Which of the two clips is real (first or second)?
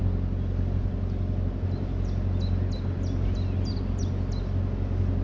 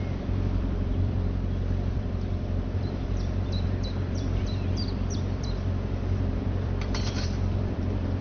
first